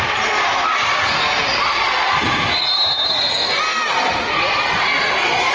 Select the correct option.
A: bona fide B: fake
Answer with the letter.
A